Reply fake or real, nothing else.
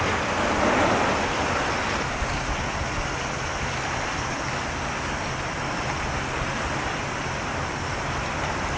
real